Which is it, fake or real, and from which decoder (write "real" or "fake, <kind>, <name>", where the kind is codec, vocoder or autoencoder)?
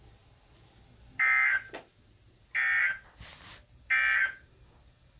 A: real